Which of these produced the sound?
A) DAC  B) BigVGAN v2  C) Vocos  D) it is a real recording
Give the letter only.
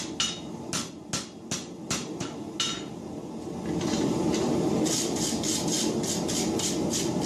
D